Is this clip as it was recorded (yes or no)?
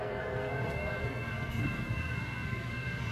no